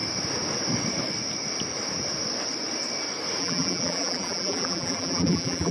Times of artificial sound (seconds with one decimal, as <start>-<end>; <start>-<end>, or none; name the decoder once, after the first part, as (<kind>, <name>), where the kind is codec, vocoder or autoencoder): 3.4-5.7 (vocoder, BigVGAN v2)

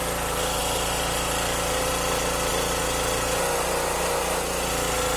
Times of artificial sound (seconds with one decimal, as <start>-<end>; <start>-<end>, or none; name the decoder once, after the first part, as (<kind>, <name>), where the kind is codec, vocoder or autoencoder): none

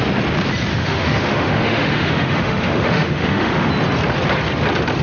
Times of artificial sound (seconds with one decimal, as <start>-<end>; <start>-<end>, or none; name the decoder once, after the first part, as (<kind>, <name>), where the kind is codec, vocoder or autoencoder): 0.7-3.7 (autoencoder, DAC-VAE)

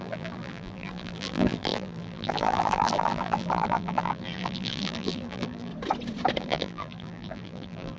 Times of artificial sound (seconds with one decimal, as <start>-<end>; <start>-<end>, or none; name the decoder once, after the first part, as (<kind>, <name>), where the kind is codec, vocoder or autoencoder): 0.0-5.7 (vocoder, BigVGAN v2); 6.4-8.0

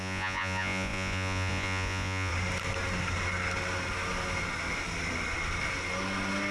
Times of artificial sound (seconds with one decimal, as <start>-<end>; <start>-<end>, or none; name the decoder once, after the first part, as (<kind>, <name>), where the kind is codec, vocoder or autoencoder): 0.0-2.3 (vocoder, Vocos)

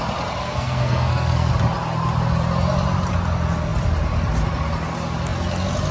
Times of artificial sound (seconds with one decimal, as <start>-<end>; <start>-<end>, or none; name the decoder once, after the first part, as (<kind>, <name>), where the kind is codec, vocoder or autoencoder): 0.4-1.5 (codec, SNAC)

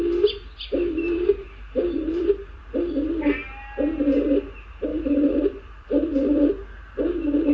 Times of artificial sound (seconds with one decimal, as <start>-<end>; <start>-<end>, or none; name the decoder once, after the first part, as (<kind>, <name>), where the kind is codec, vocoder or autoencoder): 0.4-2.6 (vocoder, BigVGAN v2); 4.9-6.5

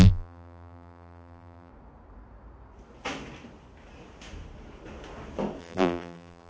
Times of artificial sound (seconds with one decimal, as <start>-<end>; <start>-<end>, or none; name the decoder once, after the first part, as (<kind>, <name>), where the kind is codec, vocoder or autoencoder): 0.0-1.7 (vocoder, BigVGAN v2); 5.6-6.5